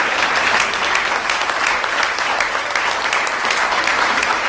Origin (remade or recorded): recorded